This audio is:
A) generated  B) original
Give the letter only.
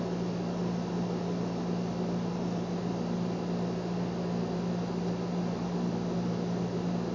B